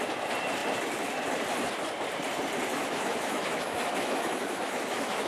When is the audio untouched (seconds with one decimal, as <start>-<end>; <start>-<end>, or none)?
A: 0.0-2.7